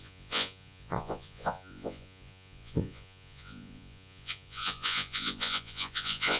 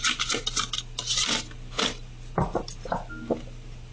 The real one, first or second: second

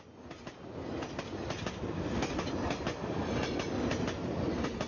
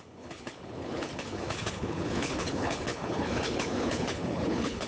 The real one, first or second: first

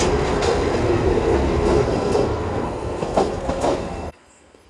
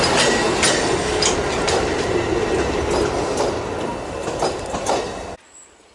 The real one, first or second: second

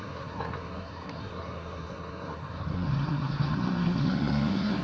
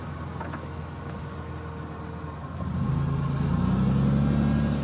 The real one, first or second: second